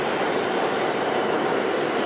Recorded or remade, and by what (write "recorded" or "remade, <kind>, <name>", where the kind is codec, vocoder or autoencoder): recorded